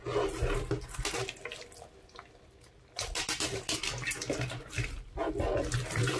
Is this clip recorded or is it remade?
recorded